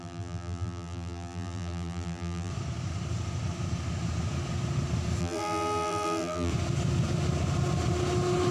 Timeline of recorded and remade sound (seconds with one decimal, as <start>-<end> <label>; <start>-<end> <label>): 0.0-2.5 remade; 2.5-5.2 recorded; 5.2-6.5 remade; 6.5-8.5 recorded